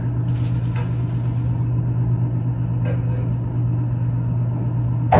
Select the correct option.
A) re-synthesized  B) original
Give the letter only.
B